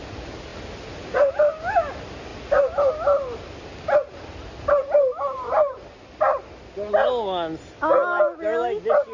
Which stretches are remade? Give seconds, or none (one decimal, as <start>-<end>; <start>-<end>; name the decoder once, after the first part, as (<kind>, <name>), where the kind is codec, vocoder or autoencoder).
none